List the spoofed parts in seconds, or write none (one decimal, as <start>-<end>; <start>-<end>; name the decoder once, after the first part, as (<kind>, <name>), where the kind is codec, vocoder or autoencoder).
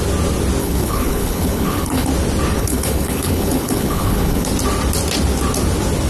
0.6-2.1 (codec, HILCodec); 2.6-4.5